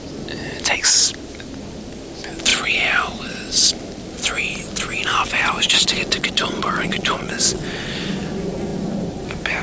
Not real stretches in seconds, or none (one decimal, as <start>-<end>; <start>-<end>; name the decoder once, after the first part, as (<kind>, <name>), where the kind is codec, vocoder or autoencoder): 2.5-3.7 (vocoder, WaveNeXt); 5.1-7.9